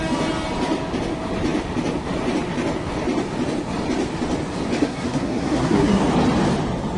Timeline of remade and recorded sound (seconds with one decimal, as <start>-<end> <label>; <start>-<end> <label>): 0.0-4.8 recorded; 4.8-6.0 remade; 6.0-7.0 recorded